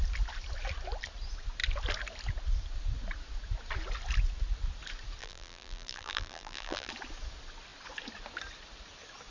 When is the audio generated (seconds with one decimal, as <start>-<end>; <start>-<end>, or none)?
5.2-6.9